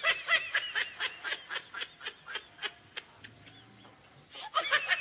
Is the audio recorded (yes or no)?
yes